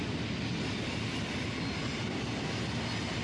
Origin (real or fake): real